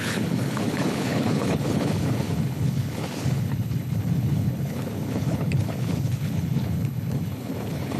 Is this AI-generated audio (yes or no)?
yes